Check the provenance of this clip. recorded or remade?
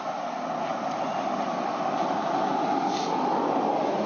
recorded